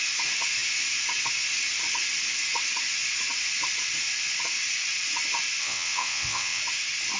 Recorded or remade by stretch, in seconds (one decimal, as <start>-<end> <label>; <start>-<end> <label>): 0.0-5.6 recorded; 5.6-6.6 remade; 6.6-7.2 recorded

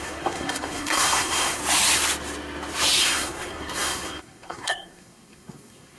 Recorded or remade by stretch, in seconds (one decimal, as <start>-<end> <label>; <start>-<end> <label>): 0.0-1.6 remade; 1.6-3.0 recorded; 3.0-6.0 remade

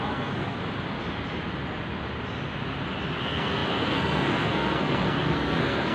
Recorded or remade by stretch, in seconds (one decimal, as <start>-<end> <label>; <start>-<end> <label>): 0.0-0.6 remade; 0.6-3.2 recorded; 3.2-5.9 remade

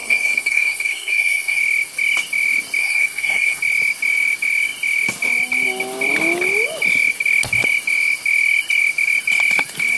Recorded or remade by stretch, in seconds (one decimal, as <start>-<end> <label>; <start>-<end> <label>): 0.0-1.6 remade; 1.6-2.8 recorded; 2.8-3.6 remade; 3.6-10.0 recorded

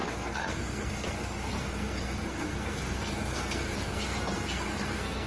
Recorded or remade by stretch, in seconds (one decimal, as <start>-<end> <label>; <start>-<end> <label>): 0.0-5.3 remade